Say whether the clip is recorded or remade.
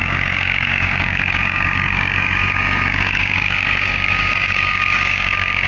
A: remade